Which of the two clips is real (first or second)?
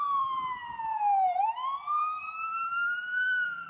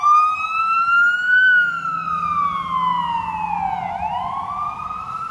second